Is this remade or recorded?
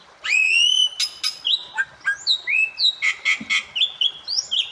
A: recorded